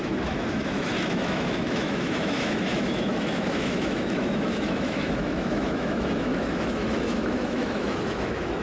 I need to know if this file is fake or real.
fake